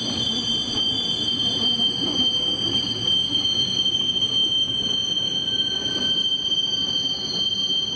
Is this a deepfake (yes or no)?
no